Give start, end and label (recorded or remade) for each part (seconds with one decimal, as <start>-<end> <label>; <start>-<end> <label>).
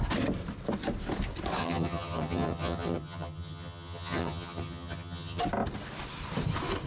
0.0-1.6 recorded; 1.6-5.4 remade; 5.4-6.9 recorded